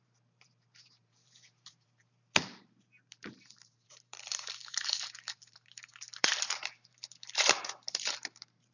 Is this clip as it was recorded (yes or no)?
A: no